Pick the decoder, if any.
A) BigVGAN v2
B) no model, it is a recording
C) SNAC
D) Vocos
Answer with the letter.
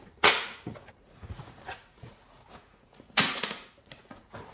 D